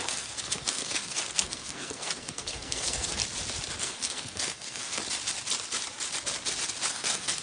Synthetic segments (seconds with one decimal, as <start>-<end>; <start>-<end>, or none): 0.0-3.2; 3.8-5.0; 6.9-7.4